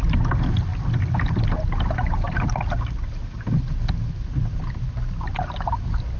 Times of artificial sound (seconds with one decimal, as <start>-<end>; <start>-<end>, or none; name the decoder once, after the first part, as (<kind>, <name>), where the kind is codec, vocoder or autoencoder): none